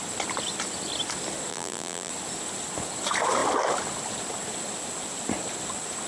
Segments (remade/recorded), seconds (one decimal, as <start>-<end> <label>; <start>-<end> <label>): 0.0-1.5 recorded; 1.5-2.1 remade; 2.1-6.1 recorded